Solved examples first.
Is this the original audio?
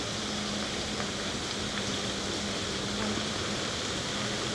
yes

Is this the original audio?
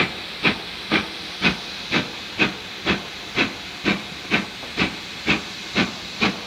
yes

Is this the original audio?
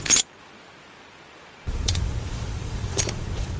no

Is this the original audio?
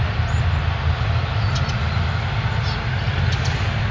yes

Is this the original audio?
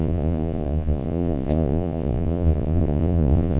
no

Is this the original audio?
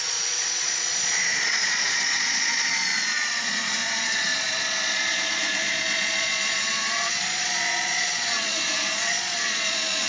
no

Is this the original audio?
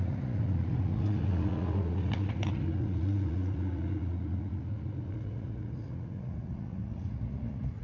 no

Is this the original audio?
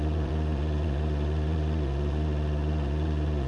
no